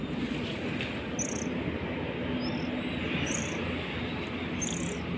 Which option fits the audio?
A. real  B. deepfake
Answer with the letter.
A